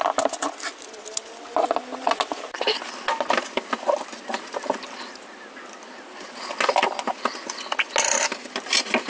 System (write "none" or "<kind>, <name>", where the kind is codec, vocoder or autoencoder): none